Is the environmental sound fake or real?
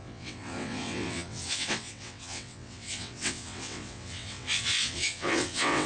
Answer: fake